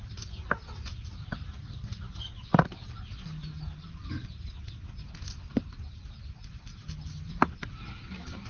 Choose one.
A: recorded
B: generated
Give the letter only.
A